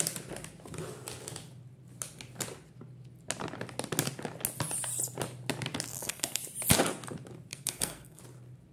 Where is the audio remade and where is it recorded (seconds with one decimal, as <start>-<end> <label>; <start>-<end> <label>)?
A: 0.0-5.9 recorded; 5.9-6.4 remade; 6.4-7.5 recorded; 7.5-8.2 remade; 8.2-8.7 recorded